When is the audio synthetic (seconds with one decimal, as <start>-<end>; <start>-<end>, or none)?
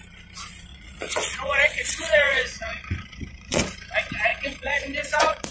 0.7-3.6; 4.3-5.5